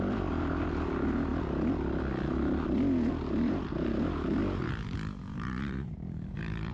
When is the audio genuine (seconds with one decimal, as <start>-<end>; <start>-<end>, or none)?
1.3-3.1; 4.4-5.2